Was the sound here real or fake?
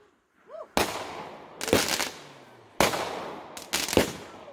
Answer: real